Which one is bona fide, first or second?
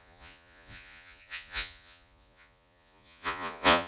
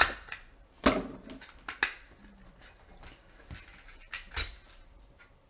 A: second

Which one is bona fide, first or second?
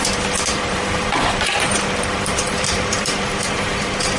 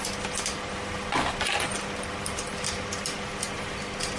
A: second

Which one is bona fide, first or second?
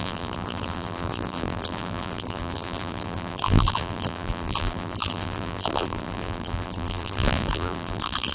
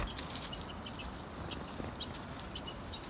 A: second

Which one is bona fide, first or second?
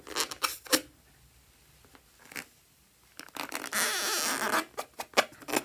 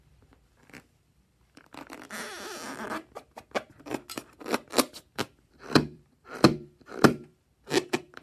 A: first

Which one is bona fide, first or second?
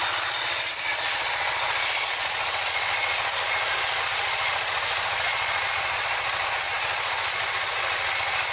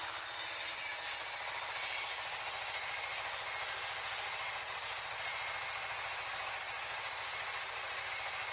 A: second